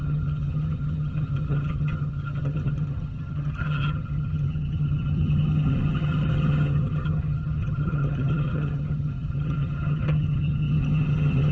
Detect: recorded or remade remade